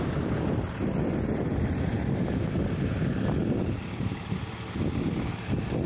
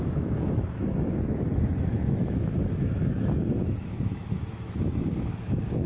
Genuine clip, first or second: first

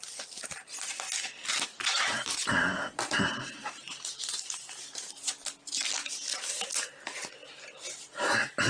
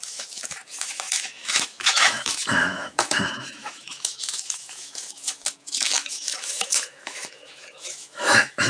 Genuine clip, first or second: first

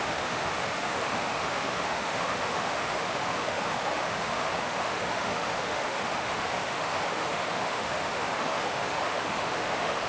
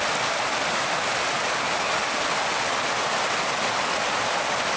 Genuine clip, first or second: second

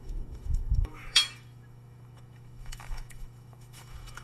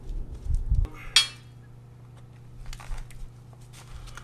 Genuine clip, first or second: second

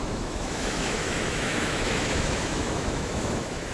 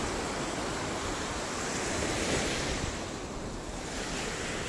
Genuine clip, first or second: second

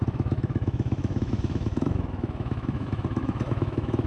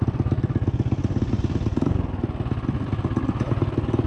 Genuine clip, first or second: second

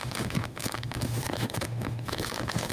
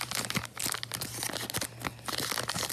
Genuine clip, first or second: second